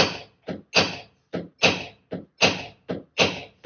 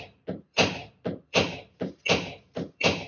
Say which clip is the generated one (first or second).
second